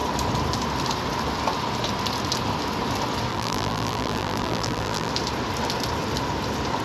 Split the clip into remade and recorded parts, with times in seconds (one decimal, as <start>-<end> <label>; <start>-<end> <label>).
0.0-3.3 recorded; 3.3-5.1 remade; 5.1-6.8 recorded